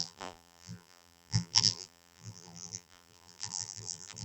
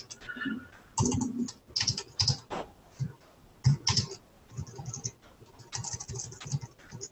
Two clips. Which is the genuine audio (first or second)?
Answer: second